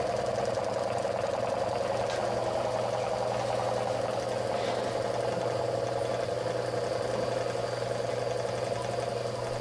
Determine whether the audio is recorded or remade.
recorded